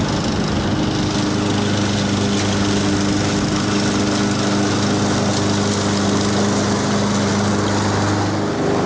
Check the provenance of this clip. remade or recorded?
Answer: recorded